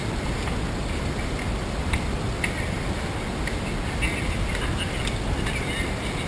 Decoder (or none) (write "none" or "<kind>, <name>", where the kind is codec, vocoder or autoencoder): none